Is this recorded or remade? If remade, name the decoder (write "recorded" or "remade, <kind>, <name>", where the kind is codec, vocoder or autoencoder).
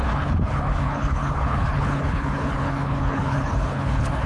remade, codec, HILCodec